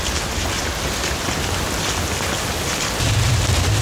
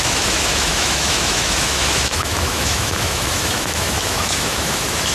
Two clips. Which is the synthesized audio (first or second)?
second